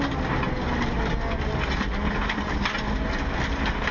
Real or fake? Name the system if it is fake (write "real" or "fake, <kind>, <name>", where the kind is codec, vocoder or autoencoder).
real